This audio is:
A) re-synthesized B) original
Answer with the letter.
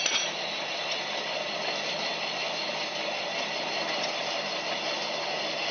B